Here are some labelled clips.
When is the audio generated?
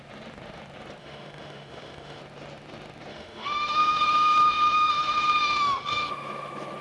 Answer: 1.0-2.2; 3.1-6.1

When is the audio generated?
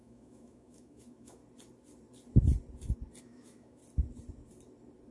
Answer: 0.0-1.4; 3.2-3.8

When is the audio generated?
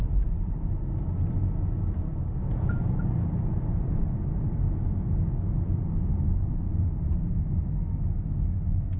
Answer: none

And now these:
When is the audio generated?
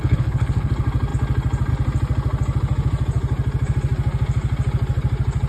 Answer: 0.0-0.7